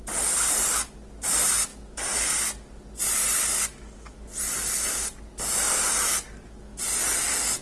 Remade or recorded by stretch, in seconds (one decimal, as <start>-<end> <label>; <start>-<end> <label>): 0.0-7.6 recorded

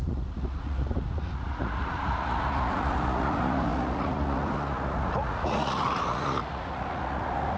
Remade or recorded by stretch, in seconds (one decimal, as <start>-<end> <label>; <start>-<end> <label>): 0.0-7.6 remade